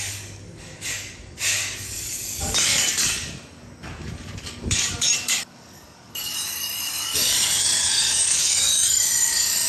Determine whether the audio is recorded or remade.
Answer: remade